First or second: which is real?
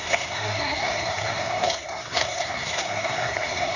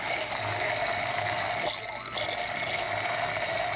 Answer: second